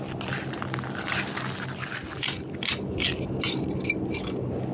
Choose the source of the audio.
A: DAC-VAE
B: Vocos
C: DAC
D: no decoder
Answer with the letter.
D